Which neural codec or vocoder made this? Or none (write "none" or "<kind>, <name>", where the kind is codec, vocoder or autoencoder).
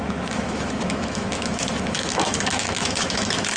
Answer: autoencoder, DAC-VAE